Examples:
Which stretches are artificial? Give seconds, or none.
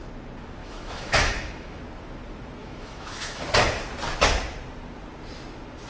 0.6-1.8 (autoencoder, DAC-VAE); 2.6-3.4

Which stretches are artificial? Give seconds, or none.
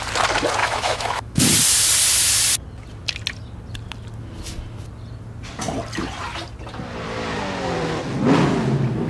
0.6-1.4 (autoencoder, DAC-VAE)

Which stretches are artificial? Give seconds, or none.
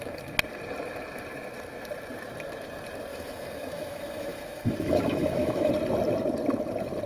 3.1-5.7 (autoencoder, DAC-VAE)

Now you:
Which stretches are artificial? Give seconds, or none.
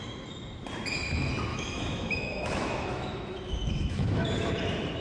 1.5-4.5 (autoencoder, DAC-VAE)